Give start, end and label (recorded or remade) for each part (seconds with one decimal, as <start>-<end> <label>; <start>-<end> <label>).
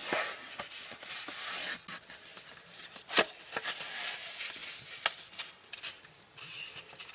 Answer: 0.0-7.1 recorded